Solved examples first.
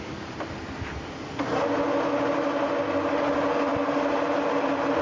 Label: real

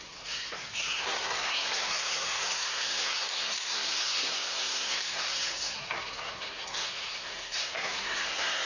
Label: fake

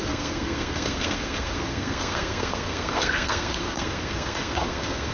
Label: fake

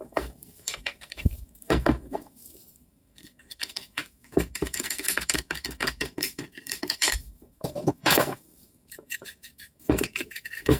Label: fake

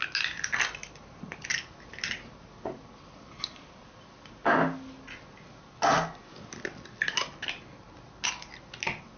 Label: real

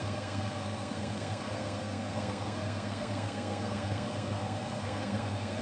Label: fake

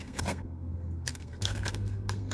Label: fake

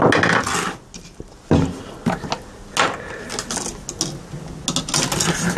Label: real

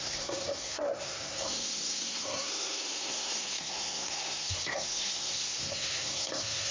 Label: fake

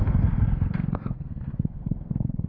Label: fake